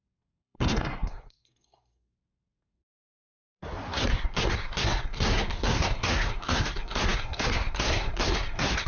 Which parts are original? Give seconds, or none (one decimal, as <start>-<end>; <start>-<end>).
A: none